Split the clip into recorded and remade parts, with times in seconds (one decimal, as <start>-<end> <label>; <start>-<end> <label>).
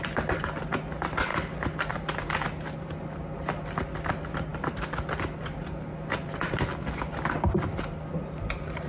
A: 0.0-8.9 recorded